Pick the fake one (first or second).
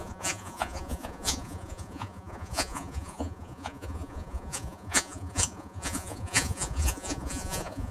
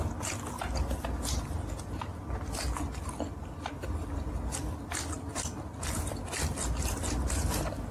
first